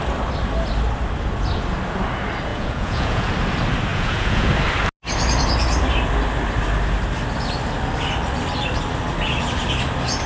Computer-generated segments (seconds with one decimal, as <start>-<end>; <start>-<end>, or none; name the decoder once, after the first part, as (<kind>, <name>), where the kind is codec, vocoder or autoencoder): 2.5-3.3 (vocoder, Vocos); 3.9-4.5